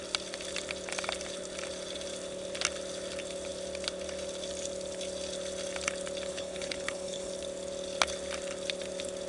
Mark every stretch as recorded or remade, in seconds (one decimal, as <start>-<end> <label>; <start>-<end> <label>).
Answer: 0.0-6.3 recorded; 6.3-7.3 remade; 7.3-9.3 recorded